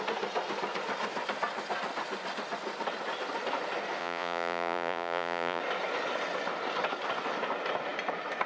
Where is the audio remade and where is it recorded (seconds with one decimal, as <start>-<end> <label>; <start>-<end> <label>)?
0.0-4.0 recorded; 4.0-5.6 remade; 5.6-8.5 recorded